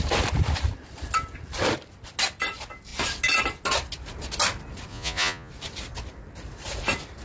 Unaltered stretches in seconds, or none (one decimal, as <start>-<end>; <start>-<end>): 0.0-4.9; 5.5-7.2